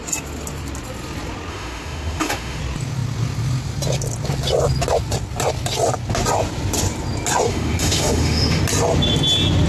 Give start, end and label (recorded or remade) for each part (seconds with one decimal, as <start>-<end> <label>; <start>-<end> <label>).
0.0-1.5 recorded; 1.5-2.6 remade; 2.6-7.5 recorded; 7.5-8.6 remade; 8.6-9.7 recorded